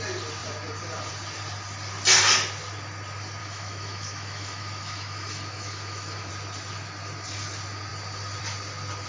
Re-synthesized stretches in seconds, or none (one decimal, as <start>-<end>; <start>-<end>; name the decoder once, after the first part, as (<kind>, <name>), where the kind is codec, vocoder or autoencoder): 3.4-6.3 (autoencoder, DAC-VAE)